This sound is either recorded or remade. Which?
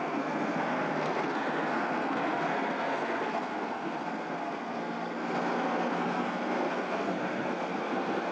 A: remade